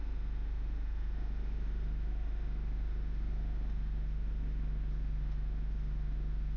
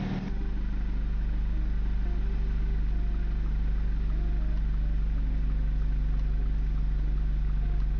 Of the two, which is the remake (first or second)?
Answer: first